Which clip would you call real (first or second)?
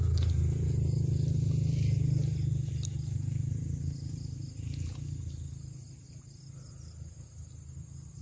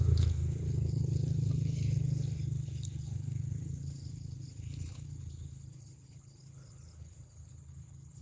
first